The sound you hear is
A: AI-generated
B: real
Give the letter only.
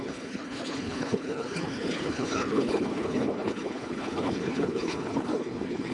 A